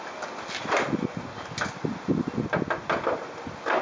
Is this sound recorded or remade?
recorded